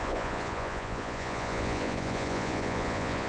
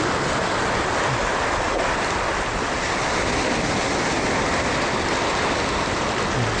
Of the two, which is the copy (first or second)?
first